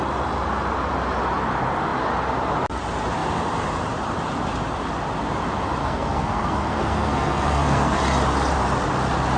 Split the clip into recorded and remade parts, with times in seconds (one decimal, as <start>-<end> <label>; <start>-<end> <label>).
0.0-5.8 recorded; 5.8-8.0 remade; 8.0-9.4 recorded